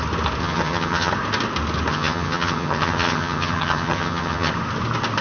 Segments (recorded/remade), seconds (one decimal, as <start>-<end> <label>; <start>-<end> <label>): 0.0-0.4 recorded; 0.4-1.1 remade; 1.1-1.9 recorded; 1.9-4.5 remade; 4.5-5.2 recorded